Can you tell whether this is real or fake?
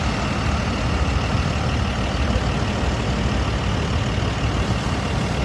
real